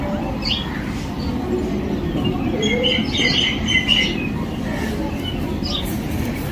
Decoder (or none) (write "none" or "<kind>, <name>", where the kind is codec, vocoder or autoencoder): none